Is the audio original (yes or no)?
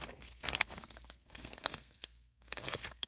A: no